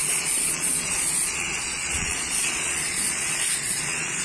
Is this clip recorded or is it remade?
remade